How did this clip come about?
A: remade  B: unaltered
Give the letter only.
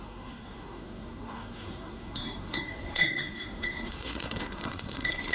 A